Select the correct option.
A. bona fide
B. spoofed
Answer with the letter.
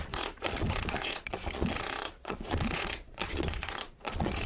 B